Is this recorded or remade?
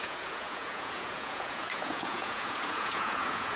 remade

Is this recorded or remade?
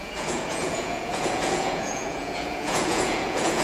remade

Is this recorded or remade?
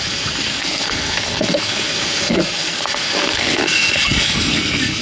remade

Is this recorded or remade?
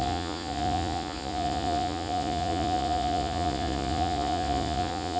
remade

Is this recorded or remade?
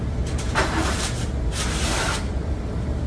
recorded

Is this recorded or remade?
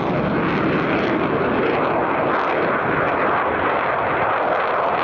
recorded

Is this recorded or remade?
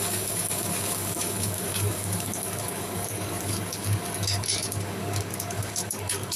remade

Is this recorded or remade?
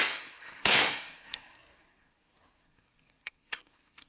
remade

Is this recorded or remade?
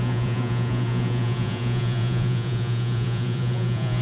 remade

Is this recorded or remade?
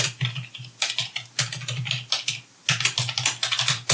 recorded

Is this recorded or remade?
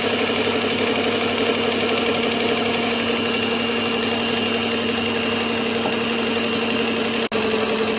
recorded